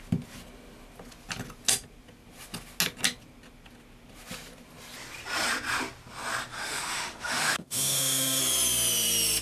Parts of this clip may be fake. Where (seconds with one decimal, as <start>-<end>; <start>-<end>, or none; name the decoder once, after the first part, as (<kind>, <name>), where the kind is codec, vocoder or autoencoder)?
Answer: 6.5-8.4 (autoencoder, DAC-VAE)